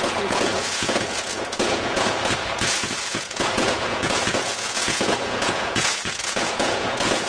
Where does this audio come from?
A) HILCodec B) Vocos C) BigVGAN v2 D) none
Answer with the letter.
B